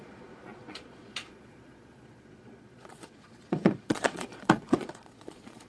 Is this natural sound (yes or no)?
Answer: no